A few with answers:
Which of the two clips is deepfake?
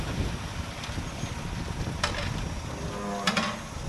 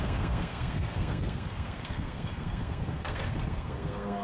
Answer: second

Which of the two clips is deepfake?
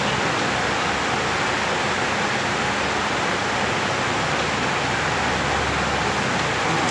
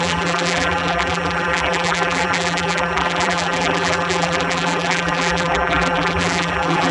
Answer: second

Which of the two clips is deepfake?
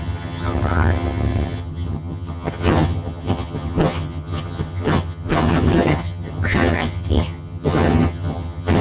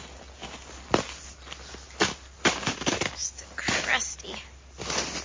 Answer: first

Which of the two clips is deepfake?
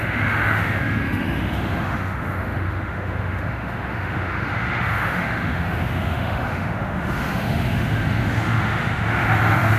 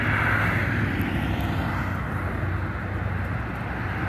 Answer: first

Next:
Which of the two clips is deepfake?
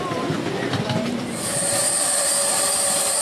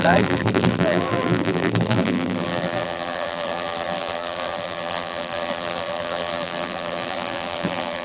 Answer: second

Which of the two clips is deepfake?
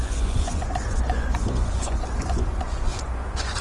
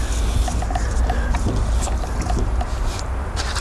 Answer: first